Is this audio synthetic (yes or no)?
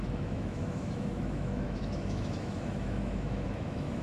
yes